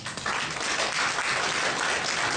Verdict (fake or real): real